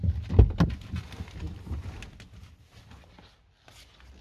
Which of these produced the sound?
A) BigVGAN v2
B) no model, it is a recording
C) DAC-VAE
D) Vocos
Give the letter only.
B